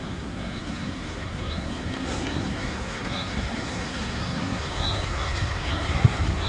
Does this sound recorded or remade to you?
remade